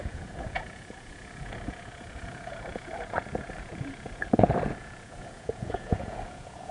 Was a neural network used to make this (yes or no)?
yes